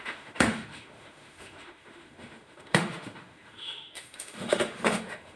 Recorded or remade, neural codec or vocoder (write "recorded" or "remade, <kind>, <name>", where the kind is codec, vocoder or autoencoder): remade, autoencoder, DAC-VAE